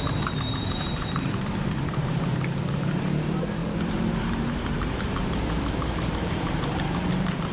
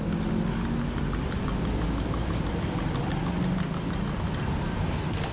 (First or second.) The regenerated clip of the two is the first